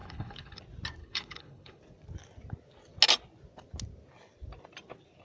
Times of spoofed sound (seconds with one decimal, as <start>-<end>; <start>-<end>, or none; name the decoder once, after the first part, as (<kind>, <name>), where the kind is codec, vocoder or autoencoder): 0.0-0.6 (codec, HILCodec); 1.0-1.8